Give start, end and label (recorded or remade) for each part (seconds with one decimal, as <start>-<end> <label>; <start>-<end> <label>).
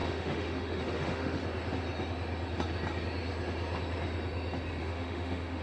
0.0-1.4 remade; 1.4-4.8 recorded; 4.8-5.6 remade